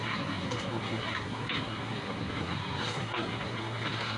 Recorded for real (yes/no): no